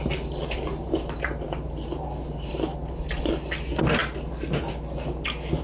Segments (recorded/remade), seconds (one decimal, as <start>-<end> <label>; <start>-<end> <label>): 0.0-0.4 recorded; 0.4-3.3 remade; 3.3-5.6 recorded